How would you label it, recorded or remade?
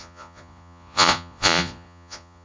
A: remade